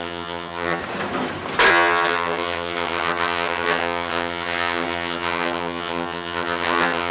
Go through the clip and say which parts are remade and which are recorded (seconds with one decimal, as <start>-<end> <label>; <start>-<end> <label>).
0.0-0.8 remade; 0.8-1.7 recorded; 1.7-7.1 remade